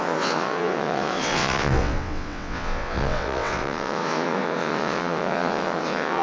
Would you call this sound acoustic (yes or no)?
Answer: no